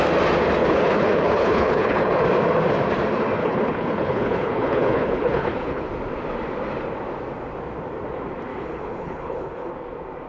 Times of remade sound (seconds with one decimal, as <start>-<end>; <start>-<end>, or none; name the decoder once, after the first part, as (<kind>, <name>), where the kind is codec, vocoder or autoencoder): 0.6-2.2 (codec, HILCodec); 3.4-5.9; 8.5-9.7